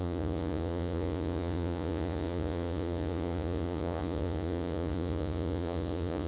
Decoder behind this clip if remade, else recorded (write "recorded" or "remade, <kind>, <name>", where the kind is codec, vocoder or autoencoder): remade, vocoder, Vocos